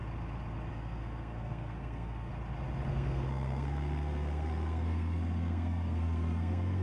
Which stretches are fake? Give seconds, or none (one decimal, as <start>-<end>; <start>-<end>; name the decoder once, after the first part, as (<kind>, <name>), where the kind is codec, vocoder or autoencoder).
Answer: 0.7-2.3 (codec, SNAC); 2.9-6.8